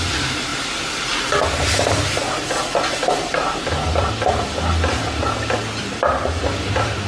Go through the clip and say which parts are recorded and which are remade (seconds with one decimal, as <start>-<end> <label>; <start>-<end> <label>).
0.0-7.1 recorded